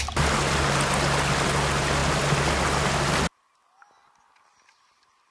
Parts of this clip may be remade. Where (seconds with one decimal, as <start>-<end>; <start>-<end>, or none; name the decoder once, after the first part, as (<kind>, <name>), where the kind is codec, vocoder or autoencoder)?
none